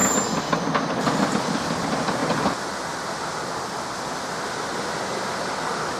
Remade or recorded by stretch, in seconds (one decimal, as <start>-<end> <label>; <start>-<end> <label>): 0.0-6.0 recorded